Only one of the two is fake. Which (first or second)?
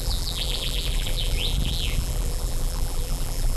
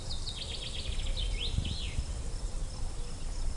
first